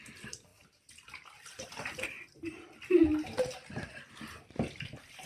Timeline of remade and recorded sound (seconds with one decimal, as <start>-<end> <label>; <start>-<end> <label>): 0.0-5.3 recorded